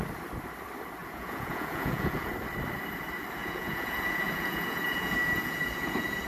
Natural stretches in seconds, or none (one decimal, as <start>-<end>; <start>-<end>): 0.0-1.0; 2.3-3.4